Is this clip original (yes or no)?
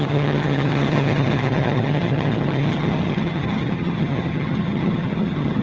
no